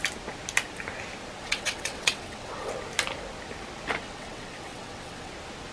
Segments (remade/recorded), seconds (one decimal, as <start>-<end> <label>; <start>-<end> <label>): 0.0-1.4 recorded; 1.4-2.7 remade; 2.7-4.0 recorded; 4.0-5.3 remade; 5.3-5.7 recorded